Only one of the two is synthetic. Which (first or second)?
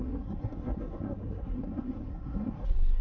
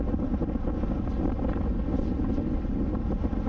first